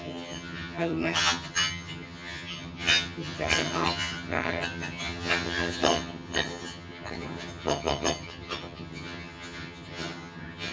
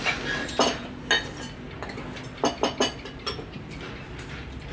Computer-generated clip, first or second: first